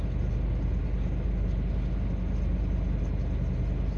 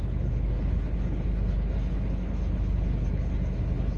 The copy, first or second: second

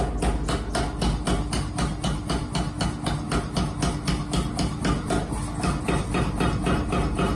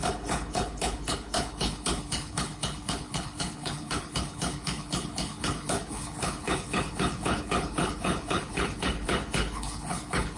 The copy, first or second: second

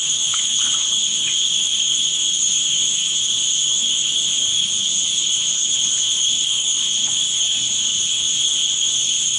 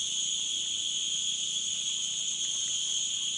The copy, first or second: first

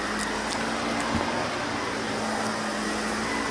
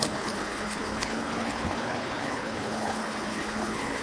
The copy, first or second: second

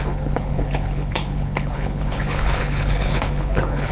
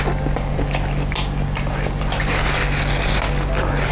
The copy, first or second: first